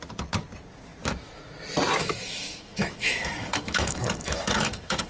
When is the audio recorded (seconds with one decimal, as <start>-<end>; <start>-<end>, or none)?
0.0-2.0